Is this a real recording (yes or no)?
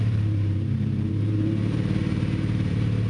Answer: no